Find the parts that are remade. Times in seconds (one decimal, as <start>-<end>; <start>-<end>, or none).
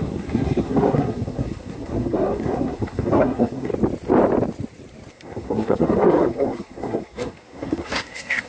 0.0-3.7; 5.1-8.5